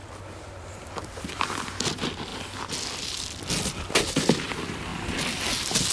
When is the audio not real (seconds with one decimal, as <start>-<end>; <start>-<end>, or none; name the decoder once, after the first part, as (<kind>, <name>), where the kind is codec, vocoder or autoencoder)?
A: none